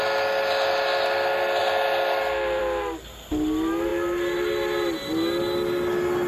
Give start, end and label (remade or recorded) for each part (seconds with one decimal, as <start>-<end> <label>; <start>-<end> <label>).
0.0-6.3 recorded